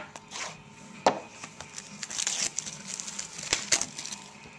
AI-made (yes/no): no